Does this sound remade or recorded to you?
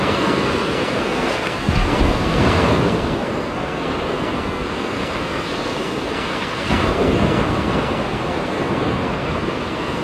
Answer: remade